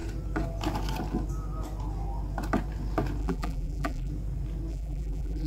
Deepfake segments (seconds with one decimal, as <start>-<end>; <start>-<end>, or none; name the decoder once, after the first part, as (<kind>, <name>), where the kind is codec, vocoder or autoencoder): 3.2-4.1 (vocoder, BigVGAN v2); 4.7-5.5